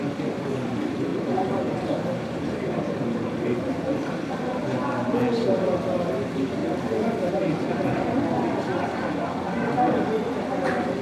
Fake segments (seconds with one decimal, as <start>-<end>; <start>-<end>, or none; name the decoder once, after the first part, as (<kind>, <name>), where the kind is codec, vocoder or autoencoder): 1.1-4.3 (vocoder, BigVGAN v2)